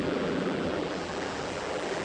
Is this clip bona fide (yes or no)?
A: no